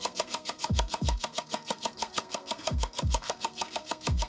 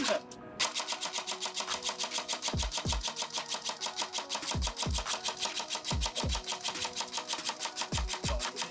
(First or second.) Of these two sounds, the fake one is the first